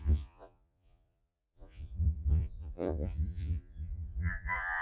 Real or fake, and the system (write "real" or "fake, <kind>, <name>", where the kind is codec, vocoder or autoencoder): fake, vocoder, Vocos